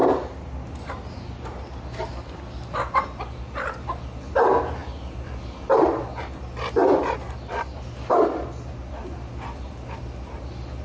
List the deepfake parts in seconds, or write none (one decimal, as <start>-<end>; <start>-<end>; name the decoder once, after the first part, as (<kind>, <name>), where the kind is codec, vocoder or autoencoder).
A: none